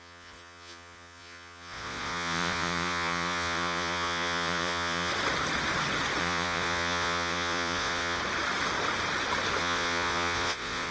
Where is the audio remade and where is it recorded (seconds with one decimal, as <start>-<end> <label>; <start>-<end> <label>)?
0.0-5.1 remade; 5.1-6.2 recorded; 6.2-8.2 remade; 8.2-9.6 recorded; 9.6-10.9 remade